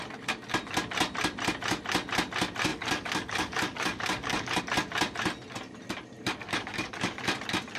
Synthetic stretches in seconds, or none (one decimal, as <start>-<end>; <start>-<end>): 2.7-4.6; 6.4-7.2